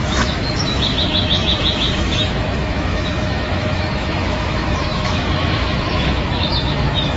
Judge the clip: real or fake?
fake